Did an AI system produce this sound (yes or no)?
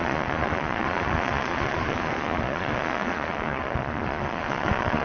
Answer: yes